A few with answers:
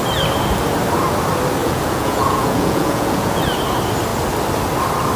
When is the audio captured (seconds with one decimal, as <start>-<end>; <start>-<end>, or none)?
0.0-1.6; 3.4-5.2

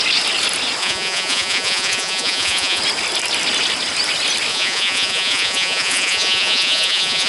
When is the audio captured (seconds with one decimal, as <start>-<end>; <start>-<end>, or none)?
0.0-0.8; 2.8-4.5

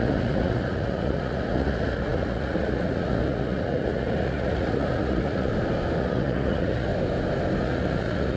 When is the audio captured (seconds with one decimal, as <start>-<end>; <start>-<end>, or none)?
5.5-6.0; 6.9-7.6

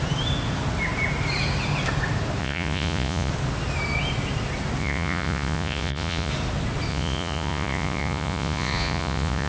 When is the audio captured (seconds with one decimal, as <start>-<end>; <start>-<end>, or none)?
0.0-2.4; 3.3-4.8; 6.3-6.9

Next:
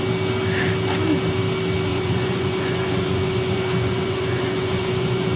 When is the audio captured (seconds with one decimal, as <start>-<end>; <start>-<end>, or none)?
0.0-1.9

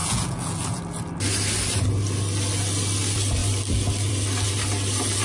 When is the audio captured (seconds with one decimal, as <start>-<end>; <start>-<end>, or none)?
0.8-5.2

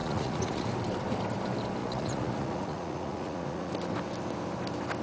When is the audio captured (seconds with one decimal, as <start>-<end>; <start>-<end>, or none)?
0.7-1.8; 3.7-5.0

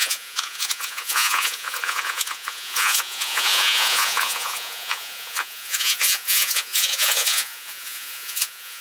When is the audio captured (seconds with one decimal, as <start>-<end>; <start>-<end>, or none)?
none